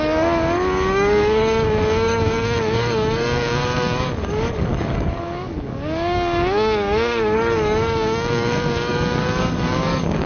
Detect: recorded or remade remade